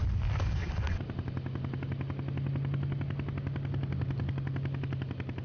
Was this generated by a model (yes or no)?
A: no